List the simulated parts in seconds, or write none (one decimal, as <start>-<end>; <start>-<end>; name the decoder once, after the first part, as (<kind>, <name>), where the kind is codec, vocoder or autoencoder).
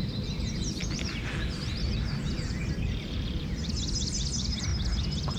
none